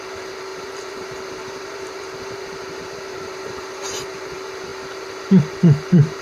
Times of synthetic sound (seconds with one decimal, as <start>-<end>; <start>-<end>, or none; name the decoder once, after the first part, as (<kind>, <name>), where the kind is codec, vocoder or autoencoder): 0.0-4.7 (vocoder, BigVGAN v2); 5.4-6.2